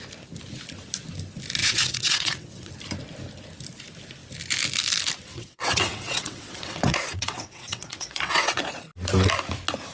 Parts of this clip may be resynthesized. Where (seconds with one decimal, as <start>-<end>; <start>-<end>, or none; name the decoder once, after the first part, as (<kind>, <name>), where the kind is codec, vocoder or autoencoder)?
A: 1.6-2.7 (vocoder, WaveNeXt); 5.3-8.6